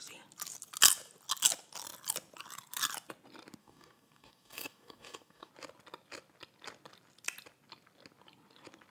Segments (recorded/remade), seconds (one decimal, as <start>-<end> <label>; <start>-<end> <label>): 0.0-3.6 recorded; 3.6-5.5 remade; 5.5-8.9 recorded